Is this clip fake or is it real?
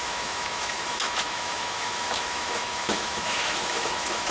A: fake